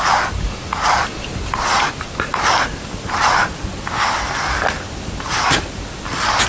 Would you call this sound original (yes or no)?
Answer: yes